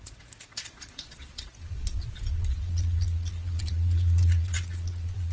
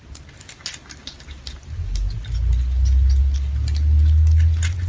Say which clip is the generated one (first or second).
first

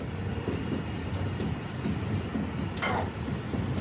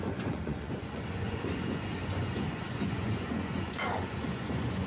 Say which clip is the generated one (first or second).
second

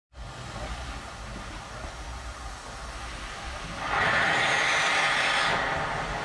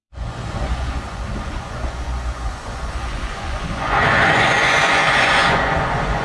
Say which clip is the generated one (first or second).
second